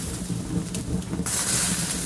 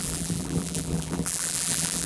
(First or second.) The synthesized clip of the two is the second